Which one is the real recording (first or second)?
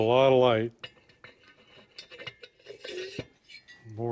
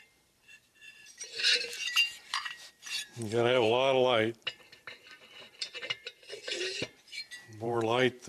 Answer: first